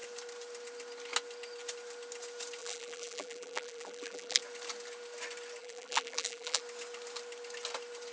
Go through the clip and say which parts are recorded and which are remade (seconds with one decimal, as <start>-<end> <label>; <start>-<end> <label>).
0.0-2.6 recorded; 2.6-4.4 remade; 4.4-5.6 recorded; 5.6-6.6 remade; 6.6-8.1 recorded